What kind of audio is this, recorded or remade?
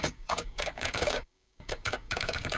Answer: remade